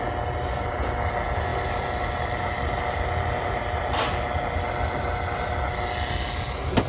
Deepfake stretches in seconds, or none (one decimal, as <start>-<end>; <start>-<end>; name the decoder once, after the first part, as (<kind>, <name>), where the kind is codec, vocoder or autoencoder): none